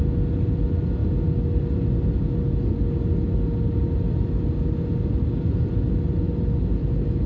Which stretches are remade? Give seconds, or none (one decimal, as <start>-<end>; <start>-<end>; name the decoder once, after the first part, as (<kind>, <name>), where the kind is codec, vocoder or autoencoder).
none